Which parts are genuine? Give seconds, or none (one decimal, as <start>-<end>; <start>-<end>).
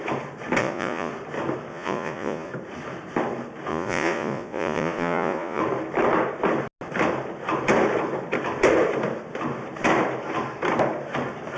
0.0-0.6; 1.1-1.7; 2.5-3.7; 5.6-11.6